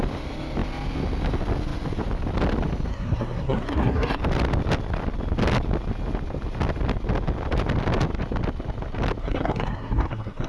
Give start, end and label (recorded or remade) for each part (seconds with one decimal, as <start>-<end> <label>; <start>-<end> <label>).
0.0-2.9 recorded; 2.9-4.2 remade; 4.2-9.2 recorded; 9.2-10.5 remade